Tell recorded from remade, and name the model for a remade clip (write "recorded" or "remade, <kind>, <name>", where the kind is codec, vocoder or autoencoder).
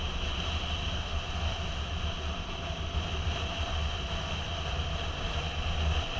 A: recorded